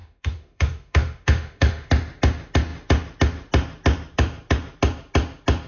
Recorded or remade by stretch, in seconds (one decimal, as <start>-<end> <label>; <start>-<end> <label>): 0.0-1.9 remade; 1.9-5.7 recorded